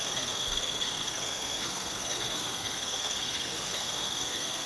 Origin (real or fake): fake